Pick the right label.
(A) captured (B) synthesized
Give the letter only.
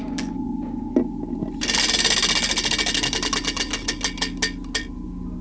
A